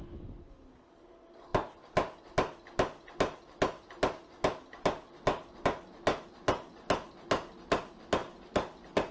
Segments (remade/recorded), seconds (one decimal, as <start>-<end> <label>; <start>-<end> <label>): 0.0-9.1 recorded